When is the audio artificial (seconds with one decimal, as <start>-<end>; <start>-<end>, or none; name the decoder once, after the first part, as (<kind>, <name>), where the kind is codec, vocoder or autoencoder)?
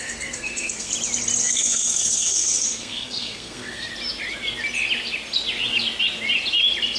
0.0-0.9 (codec, SNAC); 1.4-3.9